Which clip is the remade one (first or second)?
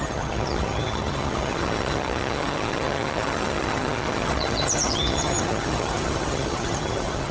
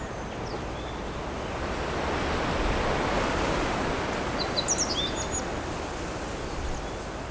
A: first